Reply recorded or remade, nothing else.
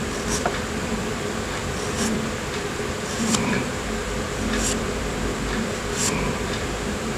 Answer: remade